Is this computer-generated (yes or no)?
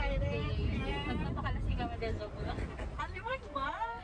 no